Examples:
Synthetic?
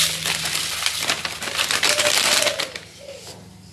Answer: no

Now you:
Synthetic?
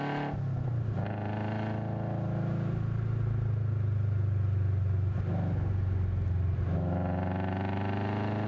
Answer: no